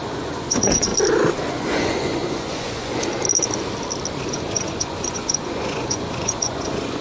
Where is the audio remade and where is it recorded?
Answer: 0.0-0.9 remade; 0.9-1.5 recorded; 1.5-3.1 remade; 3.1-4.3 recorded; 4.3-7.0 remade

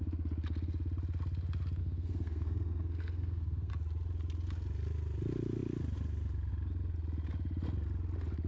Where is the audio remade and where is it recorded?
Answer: 0.0-1.8 recorded; 1.8-3.7 remade; 3.7-8.5 recorded

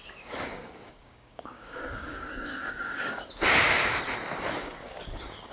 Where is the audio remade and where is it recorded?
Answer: 0.0-3.3 remade; 3.3-4.6 recorded; 4.6-5.5 remade

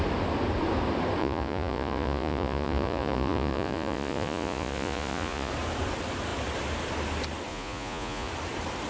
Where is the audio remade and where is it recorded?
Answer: 0.0-1.2 recorded; 1.2-5.5 remade; 5.5-7.5 recorded; 7.5-8.3 remade; 8.3-8.9 recorded

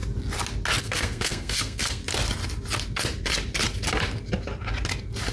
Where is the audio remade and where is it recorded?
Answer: 0.0-0.8 recorded; 0.8-2.0 remade; 2.0-5.3 recorded